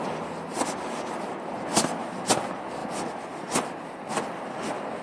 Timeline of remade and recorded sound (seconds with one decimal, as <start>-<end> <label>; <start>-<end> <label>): 0.0-5.0 recorded